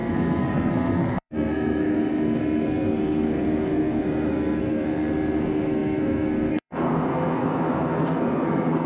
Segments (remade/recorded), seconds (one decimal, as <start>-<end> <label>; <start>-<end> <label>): 0.0-8.9 remade